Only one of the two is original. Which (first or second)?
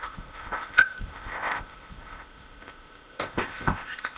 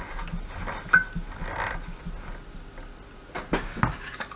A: second